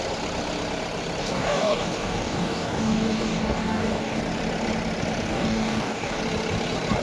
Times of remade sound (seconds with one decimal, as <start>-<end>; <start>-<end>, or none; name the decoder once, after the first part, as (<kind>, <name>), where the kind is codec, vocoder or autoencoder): 1.2-4.2 (codec, DAC); 5.3-6.2